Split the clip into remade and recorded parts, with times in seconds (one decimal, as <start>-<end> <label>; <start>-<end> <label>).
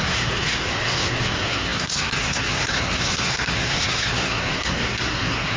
0.0-5.6 remade